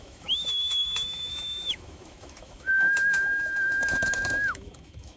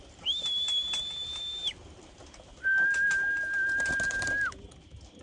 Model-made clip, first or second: first